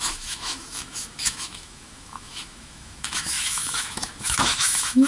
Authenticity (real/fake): fake